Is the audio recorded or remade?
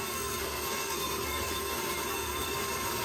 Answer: remade